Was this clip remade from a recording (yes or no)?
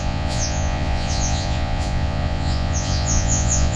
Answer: yes